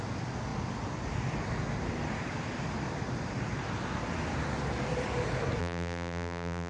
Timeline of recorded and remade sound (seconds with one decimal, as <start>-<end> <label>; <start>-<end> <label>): 0.0-5.6 recorded; 5.6-6.7 remade